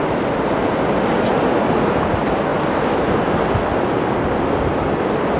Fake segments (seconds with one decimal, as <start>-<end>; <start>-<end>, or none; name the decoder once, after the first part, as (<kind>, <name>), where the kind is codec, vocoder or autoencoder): none

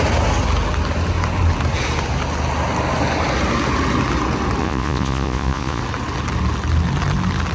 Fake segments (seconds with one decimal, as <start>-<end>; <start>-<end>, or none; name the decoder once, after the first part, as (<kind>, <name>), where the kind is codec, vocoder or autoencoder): 4.6-5.8 (vocoder, Vocos)